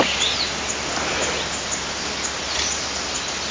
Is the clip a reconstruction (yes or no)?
no